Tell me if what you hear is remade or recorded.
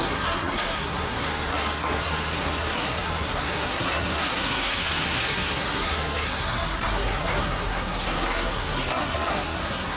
remade